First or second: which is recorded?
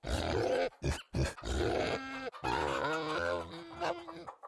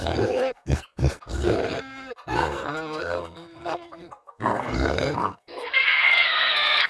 first